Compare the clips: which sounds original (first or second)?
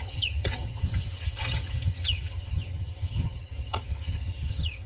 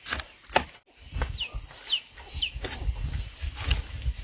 second